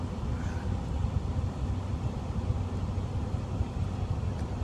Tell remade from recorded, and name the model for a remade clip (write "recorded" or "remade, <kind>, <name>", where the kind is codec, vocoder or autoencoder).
recorded